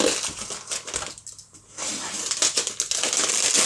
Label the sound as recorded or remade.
recorded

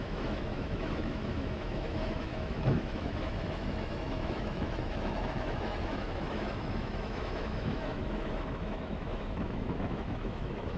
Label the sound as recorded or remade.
remade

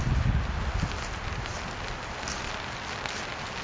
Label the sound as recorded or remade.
recorded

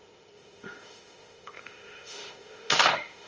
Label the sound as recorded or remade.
remade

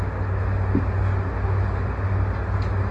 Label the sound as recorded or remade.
recorded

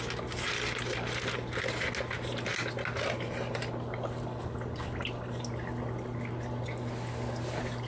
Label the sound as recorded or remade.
recorded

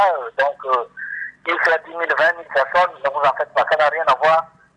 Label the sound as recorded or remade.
recorded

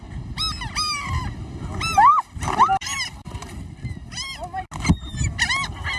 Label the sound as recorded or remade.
recorded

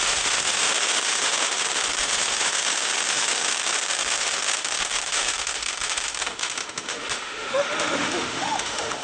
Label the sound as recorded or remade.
remade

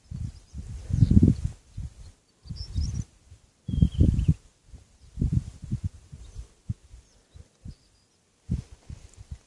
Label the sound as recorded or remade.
recorded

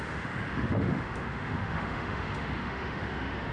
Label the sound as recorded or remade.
remade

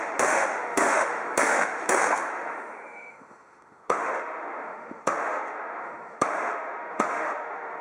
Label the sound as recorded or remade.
remade